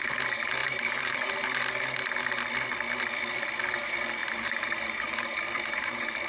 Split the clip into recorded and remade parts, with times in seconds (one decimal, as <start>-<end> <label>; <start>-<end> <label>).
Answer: 0.0-0.6 recorded; 0.6-1.3 remade; 1.3-4.2 recorded; 4.2-6.3 remade